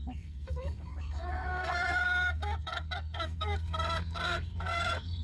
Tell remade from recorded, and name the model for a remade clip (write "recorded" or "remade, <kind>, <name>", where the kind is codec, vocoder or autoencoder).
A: remade, codec, SNAC